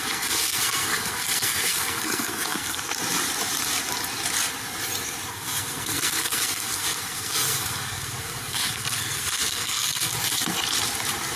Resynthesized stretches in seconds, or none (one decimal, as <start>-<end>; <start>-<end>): 0.0-2.9; 5.3-10.1